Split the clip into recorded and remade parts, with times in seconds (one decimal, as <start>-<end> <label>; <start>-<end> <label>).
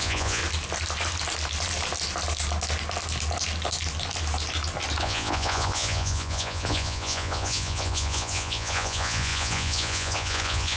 0.0-0.4 remade; 0.4-5.0 recorded; 5.0-10.8 remade